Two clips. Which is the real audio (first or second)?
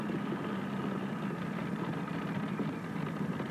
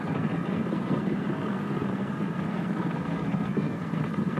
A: first